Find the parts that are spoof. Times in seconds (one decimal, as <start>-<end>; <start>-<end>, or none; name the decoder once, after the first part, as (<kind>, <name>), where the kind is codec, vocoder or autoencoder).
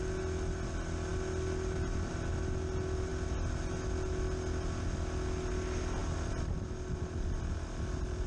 none